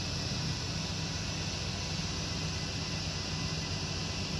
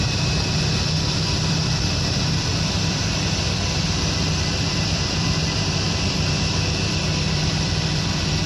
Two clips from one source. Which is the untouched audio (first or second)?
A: first